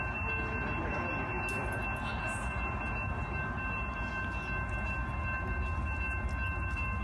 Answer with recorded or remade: recorded